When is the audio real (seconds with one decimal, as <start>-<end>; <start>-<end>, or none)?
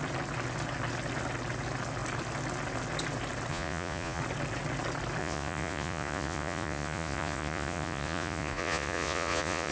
0.0-3.5; 4.2-5.2